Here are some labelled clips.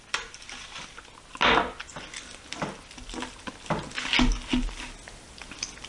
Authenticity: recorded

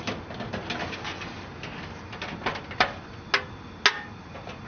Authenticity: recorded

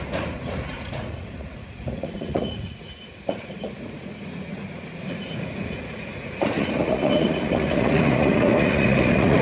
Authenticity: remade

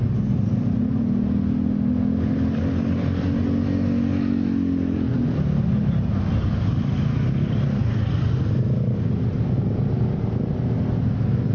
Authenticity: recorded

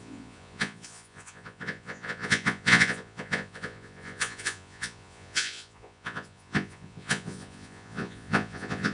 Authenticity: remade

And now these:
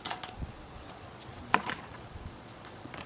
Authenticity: remade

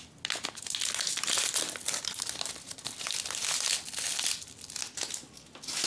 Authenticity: recorded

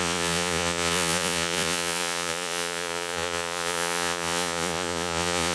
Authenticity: remade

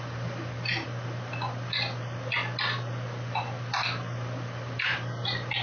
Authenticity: recorded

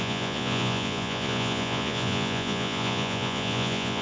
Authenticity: remade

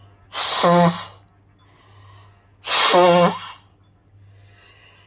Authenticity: recorded